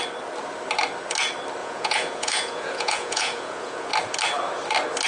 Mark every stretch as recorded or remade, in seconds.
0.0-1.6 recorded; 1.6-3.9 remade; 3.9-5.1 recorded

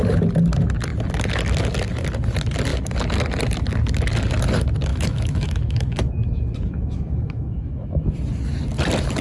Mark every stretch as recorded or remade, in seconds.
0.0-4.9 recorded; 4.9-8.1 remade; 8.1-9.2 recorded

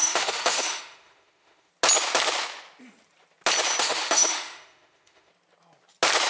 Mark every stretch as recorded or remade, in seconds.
0.0-1.7 remade; 1.7-3.8 recorded; 3.8-5.3 remade; 5.3-6.3 recorded